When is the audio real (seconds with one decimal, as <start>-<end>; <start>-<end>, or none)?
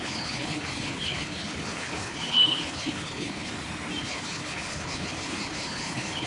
3.5-4.0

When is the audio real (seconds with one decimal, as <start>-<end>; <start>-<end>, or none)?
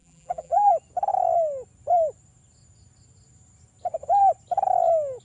0.7-5.2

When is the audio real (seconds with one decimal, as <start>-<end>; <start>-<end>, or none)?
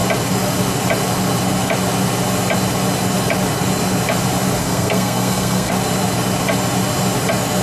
0.0-4.6; 5.7-7.6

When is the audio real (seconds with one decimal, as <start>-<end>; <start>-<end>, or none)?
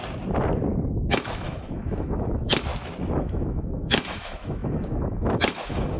0.0-0.9; 2.7-3.2